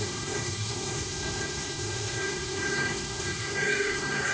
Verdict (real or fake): fake